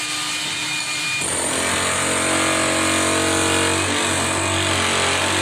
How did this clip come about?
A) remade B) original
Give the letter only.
B